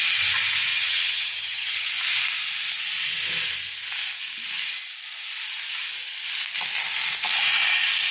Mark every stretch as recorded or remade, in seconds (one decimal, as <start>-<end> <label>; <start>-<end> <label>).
0.0-0.7 recorded; 0.7-1.9 remade; 1.9-8.1 recorded